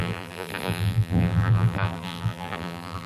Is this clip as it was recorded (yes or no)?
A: no